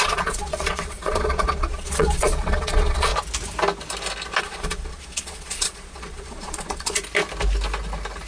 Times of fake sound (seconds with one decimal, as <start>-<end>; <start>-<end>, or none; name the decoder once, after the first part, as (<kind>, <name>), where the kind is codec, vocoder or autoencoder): 0.0-3.1 (vocoder, Vocos); 4.4-7.0